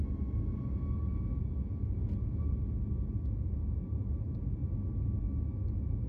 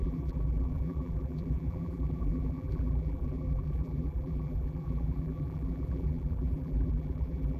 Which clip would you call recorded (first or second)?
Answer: first